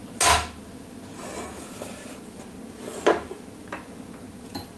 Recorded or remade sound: recorded